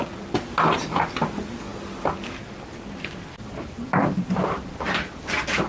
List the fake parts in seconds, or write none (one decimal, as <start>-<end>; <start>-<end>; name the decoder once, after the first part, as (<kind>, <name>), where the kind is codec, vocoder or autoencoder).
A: none